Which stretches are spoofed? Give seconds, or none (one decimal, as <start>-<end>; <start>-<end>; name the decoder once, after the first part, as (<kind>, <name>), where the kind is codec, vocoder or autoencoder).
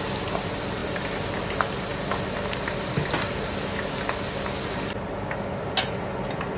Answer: none